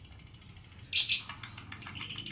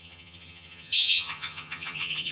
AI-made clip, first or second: second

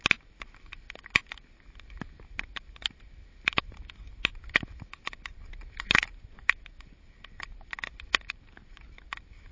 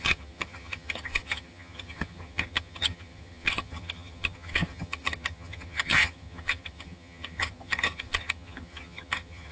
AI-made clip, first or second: second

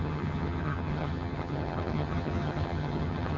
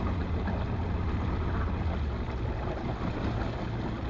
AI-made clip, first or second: first